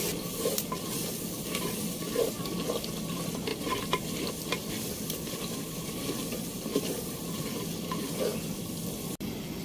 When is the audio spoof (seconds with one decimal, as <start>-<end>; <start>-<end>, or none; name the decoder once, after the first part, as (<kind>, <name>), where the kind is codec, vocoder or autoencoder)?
none